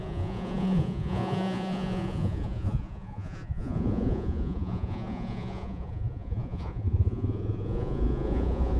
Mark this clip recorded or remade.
remade